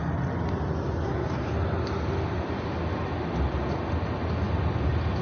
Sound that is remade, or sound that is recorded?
recorded